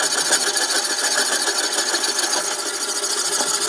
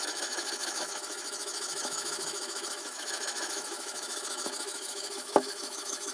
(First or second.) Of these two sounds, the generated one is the second